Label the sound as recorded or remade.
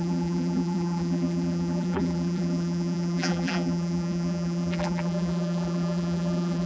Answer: remade